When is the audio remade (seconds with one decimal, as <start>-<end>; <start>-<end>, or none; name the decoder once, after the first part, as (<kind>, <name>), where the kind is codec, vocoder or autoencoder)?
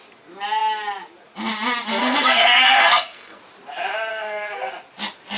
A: 2.0-3.4 (codec, SNAC); 4.1-4.7